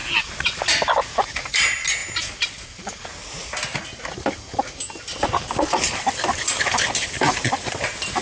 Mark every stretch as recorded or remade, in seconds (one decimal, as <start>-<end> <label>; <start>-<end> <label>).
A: 0.0-8.2 recorded